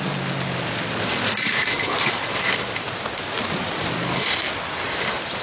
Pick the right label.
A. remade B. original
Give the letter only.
B